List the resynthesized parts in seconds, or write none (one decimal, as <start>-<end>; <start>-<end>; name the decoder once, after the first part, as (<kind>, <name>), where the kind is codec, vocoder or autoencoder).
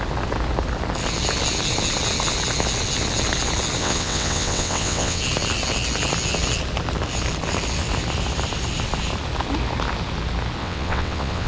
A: 3.8-5.2 (vocoder, WaveNeXt); 10.6-11.5